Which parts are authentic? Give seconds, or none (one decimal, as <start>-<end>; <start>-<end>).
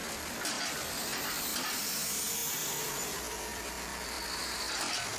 0.0-5.2